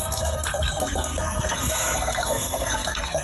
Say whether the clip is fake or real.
fake